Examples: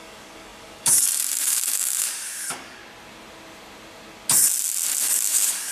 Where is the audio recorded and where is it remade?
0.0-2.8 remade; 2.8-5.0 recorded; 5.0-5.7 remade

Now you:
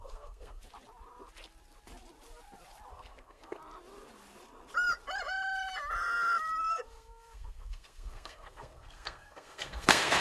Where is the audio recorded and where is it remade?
0.0-0.6 remade; 0.6-2.9 recorded; 2.9-3.6 remade; 3.6-6.7 recorded; 6.7-10.2 remade

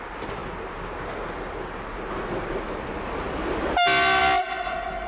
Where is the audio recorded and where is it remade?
0.0-5.1 recorded